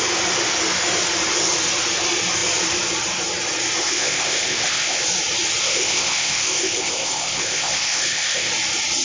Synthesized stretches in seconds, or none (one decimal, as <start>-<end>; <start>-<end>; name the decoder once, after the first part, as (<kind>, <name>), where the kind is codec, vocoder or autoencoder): 3.8-5.0 (codec, ZipCodec); 5.6-8.5